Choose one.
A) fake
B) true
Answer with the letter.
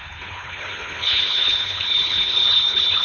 A